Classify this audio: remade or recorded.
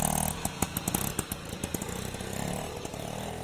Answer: recorded